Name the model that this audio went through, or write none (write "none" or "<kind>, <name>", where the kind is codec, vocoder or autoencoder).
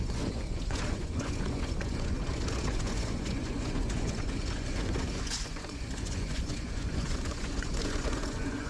vocoder, Vocos